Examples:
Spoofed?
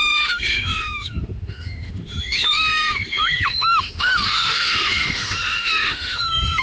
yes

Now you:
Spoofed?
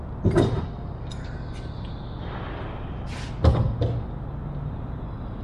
no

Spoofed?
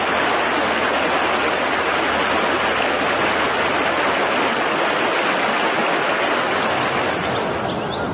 no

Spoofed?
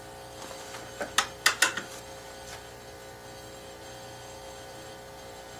no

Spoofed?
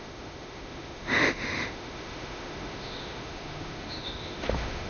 yes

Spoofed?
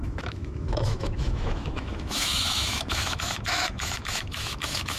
yes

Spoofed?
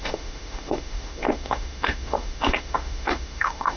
yes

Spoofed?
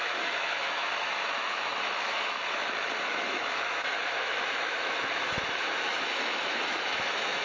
yes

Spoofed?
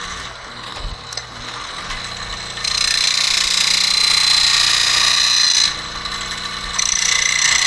no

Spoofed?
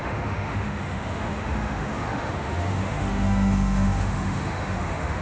yes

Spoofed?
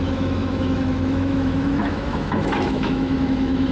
yes